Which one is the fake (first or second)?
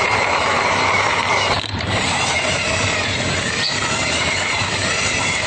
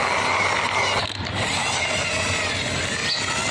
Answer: first